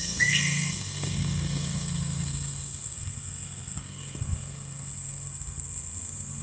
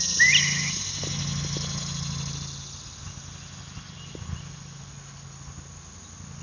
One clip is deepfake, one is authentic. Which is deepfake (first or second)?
first